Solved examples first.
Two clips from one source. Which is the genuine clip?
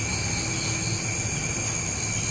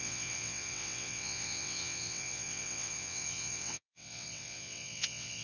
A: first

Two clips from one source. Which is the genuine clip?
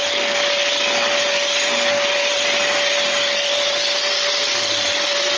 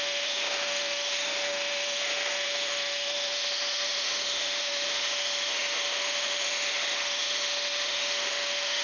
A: first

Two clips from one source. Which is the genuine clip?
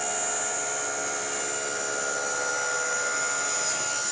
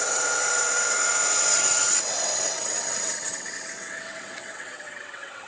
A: first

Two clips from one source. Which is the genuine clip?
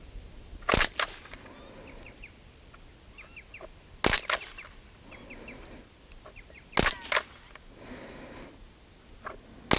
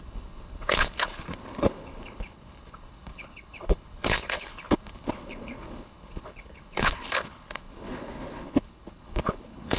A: first